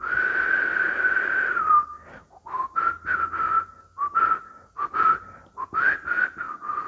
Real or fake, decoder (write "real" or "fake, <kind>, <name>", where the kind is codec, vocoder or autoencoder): real